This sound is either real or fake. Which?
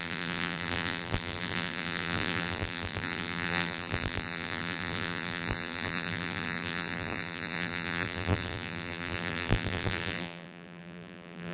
fake